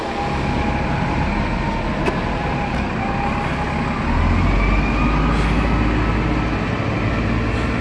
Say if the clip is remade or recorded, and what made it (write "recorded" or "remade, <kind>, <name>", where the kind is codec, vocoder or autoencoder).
recorded